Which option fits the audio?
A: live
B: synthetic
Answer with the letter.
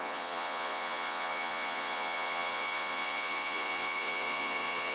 B